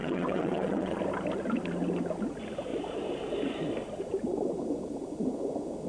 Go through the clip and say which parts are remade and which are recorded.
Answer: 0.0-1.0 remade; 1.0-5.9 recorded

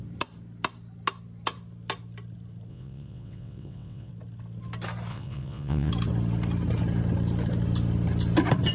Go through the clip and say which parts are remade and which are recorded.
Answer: 0.0-2.7 recorded; 2.7-4.1 remade; 4.1-5.1 recorded; 5.1-5.9 remade; 5.9-8.7 recorded

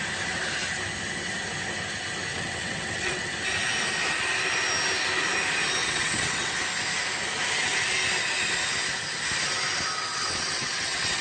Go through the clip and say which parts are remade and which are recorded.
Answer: 0.0-2.3 recorded; 2.3-3.3 remade; 3.3-5.8 recorded; 5.8-6.5 remade; 6.5-10.1 recorded; 10.1-11.2 remade

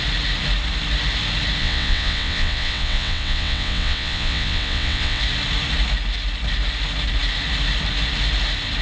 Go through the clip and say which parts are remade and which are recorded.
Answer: 0.0-1.6 recorded; 1.6-5.2 remade; 5.2-8.8 recorded

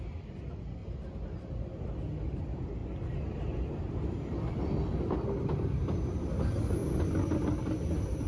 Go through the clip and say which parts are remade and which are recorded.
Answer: 0.0-8.3 recorded

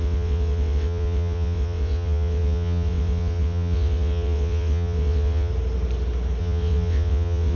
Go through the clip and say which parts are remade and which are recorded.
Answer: 0.0-5.5 remade; 5.5-6.4 recorded; 6.4-7.6 remade

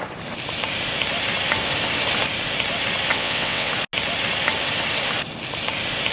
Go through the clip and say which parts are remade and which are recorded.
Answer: 0.0-3.1 recorded; 3.1-3.7 remade; 3.7-6.1 recorded

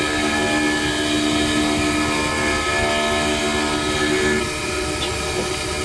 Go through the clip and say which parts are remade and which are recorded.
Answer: 0.0-5.8 recorded